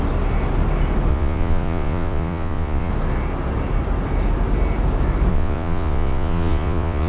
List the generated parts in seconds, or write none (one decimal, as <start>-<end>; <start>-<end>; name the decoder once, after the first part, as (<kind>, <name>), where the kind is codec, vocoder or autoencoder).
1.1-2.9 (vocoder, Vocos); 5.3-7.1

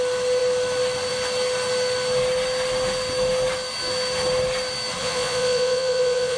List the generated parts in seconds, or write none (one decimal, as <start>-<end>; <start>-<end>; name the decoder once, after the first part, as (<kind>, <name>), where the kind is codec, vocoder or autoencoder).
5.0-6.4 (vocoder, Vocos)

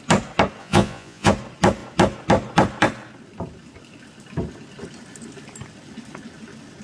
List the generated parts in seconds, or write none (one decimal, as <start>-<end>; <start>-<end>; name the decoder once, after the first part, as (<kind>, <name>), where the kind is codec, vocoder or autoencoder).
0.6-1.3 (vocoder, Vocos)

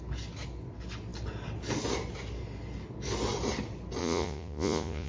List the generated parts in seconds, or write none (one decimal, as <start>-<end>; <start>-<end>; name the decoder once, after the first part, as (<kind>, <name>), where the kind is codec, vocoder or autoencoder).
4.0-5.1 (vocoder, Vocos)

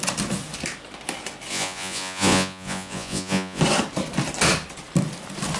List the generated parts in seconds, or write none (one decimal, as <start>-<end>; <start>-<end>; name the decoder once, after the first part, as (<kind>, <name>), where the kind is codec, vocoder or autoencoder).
1.5-3.6 (vocoder, Vocos)